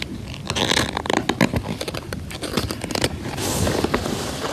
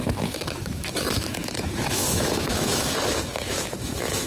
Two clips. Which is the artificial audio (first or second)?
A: second